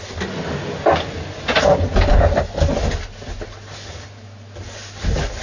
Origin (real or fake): real